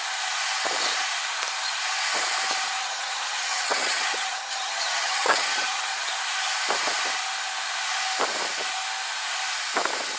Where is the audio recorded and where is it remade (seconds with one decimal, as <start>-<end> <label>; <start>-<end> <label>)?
0.0-2.8 recorded; 2.8-5.9 remade; 5.9-10.2 recorded